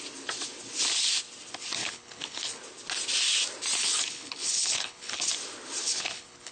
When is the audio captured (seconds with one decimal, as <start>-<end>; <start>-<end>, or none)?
0.0-1.8; 2.6-3.8; 5.2-5.8